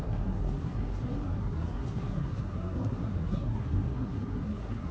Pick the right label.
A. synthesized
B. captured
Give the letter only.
A